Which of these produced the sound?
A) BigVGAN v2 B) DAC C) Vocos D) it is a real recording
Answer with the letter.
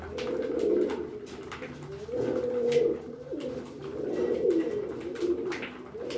D